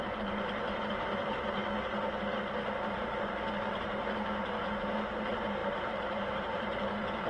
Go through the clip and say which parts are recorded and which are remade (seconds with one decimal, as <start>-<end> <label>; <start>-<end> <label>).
0.0-1.6 remade; 1.6-3.7 recorded; 3.7-7.3 remade